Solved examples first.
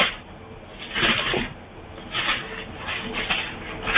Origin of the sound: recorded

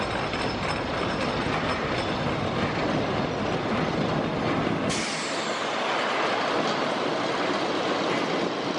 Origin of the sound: recorded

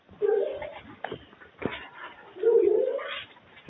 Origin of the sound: recorded